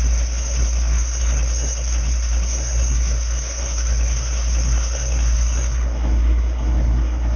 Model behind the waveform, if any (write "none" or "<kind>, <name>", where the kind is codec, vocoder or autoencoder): codec, SNAC